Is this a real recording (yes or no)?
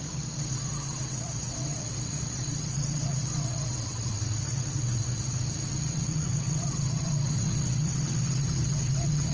no